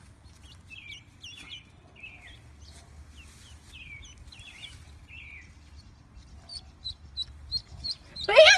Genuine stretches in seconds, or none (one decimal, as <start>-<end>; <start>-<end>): 0.0-6.5; 7.1-7.6